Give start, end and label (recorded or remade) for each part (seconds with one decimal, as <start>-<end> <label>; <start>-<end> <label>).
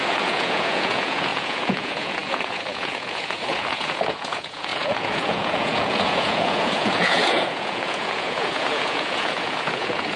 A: 0.0-10.2 remade